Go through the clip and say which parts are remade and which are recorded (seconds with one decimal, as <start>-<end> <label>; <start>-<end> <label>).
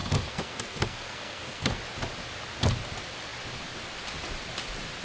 0.0-1.8 remade; 1.8-5.0 recorded